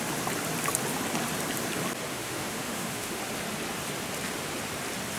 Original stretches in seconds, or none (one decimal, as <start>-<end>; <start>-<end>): 0.0-2.1; 3.2-5.2